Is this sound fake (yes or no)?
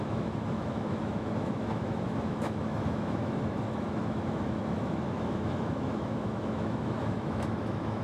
yes